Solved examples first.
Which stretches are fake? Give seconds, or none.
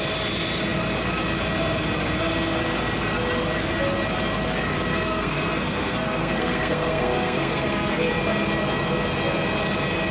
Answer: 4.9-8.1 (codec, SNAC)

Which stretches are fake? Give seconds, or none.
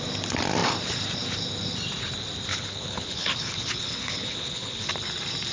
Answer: 2.5-4.9 (codec, HILCodec)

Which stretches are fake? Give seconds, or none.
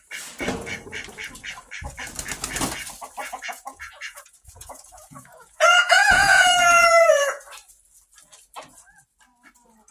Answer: 3.2-7.4 (vocoder, Vocos)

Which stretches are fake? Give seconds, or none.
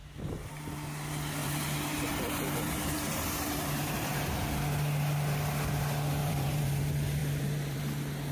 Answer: 1.4-4.6 (vocoder, BigVGAN v2); 6.2-6.8; 7.2-7.8